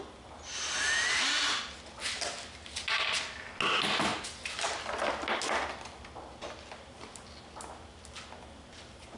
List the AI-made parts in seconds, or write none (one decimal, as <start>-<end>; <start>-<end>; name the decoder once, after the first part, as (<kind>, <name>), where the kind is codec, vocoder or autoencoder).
none